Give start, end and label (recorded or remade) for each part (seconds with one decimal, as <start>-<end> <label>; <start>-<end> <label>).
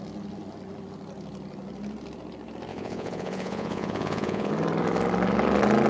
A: 0.0-2.7 recorded; 2.7-4.5 remade; 4.5-5.9 recorded